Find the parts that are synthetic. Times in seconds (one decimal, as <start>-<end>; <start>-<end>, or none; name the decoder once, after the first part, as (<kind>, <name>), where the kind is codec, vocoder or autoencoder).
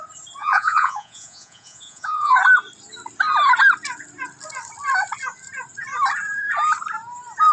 0.4-2.3 (vocoder, Vocos)